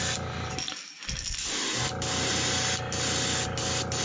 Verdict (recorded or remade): recorded